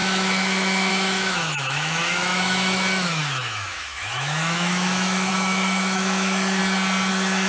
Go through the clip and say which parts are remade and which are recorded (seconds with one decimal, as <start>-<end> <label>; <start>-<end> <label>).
0.0-6.6 remade; 6.6-7.1 recorded; 7.1-7.5 remade